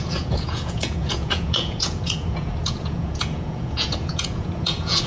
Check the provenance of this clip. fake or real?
fake